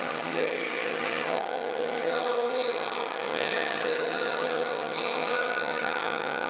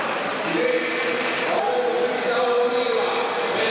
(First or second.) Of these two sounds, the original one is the second